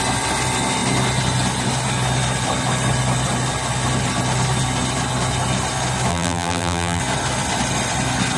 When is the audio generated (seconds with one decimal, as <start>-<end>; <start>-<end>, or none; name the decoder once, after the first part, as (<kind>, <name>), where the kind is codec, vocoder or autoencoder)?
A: 6.1-7.0 (vocoder, BigVGAN v2)